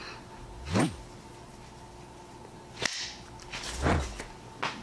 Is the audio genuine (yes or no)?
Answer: yes